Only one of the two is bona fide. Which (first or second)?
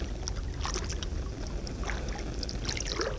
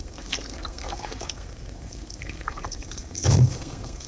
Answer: first